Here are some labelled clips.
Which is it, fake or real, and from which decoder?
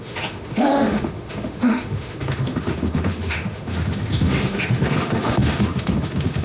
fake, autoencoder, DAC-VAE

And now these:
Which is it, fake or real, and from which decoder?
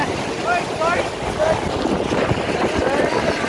real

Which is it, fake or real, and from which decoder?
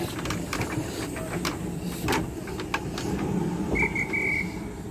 real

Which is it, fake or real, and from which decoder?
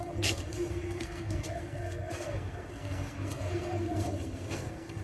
fake, codec, SNAC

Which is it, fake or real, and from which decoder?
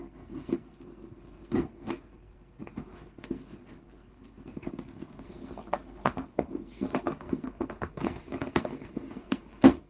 fake, codec, SNAC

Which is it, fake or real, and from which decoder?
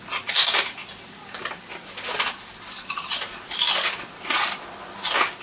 real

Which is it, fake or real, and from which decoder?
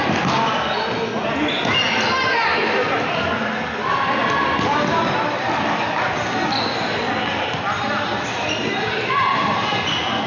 real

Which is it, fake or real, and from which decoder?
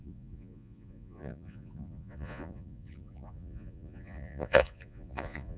fake, vocoder, Vocos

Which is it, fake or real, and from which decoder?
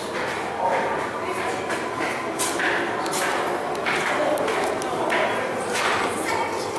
real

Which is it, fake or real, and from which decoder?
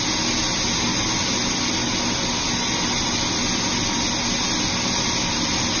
real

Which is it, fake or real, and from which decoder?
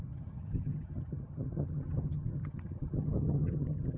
fake, vocoder, HiFi-GAN